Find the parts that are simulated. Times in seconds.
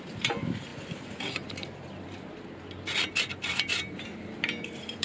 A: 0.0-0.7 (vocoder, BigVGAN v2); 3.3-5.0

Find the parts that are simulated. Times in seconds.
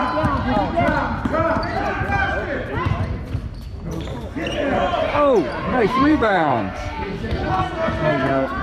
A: 5.7-8.6 (codec, SNAC)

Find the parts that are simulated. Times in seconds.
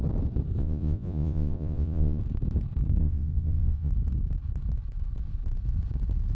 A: 0.6-2.2 (vocoder, Vocos); 3.0-3.9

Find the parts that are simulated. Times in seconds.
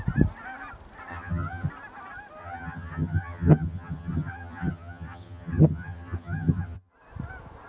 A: 1.1-1.7 (vocoder, HiFi-GAN); 2.4-6.9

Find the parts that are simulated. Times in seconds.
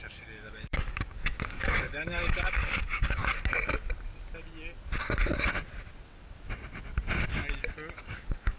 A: 0.0-3.2 (codec, DAC); 8.1-8.6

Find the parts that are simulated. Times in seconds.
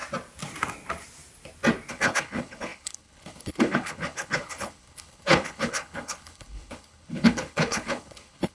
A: 1.9-8.5 (codec, HILCodec)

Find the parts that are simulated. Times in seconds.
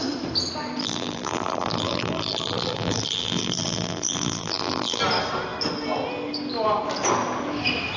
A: 0.8-5.0 (vocoder, BigVGAN v2)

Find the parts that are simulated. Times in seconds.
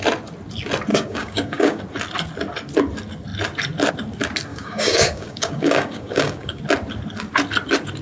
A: 0.9-1.8 (codec, DAC); 4.5-6.6